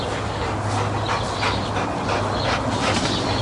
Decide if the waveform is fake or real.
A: real